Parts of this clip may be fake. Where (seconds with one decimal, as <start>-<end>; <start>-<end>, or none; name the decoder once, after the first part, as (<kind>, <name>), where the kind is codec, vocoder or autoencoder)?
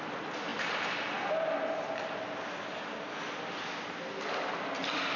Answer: none